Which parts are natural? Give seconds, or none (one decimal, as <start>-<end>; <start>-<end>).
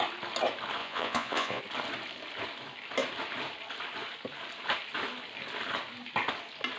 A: 0.0-0.8; 1.6-6.8